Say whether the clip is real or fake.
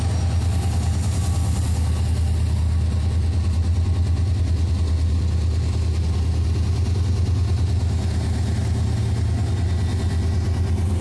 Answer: real